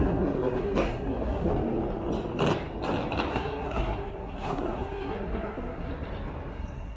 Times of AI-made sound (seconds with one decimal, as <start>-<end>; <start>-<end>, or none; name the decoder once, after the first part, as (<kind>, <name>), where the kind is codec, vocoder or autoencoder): 0.0-1.5 (codec, SNAC); 3.3-5.9; 6.5-7.0